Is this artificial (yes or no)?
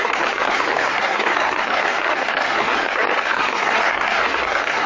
yes